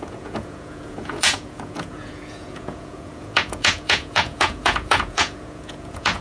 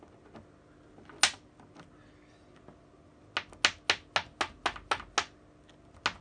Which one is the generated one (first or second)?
first